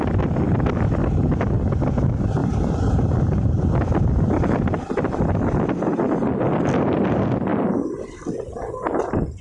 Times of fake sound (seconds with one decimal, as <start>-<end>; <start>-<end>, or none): 2.4-6.2; 7.5-8.3